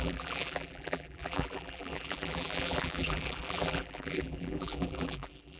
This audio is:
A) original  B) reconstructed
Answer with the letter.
B